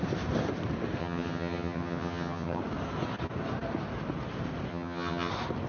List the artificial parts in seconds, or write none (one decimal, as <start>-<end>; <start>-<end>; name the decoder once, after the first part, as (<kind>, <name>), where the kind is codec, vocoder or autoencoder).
1.0-2.6 (vocoder, HiFi-GAN); 4.7-5.3